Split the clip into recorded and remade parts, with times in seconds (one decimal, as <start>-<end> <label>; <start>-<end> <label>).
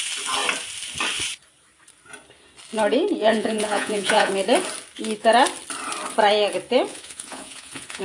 0.0-3.2 recorded; 3.2-4.3 remade; 4.3-6.9 recorded; 6.9-8.0 remade